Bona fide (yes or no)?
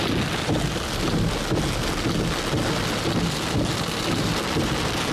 yes